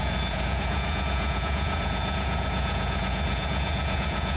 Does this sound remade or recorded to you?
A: remade